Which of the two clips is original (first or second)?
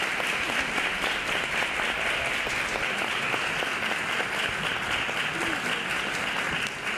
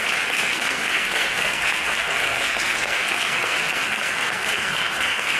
first